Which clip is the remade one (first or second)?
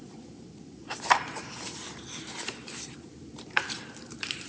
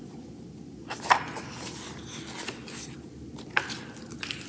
first